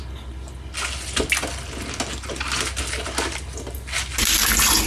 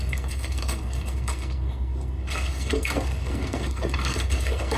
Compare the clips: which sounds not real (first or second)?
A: second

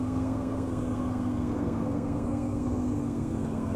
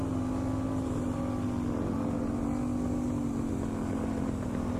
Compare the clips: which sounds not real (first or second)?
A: first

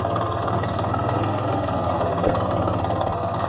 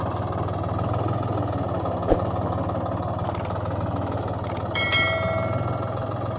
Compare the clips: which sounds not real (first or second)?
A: first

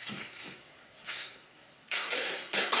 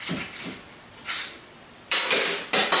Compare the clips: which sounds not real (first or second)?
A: first